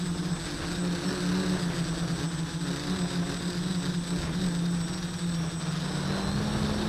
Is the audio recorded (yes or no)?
yes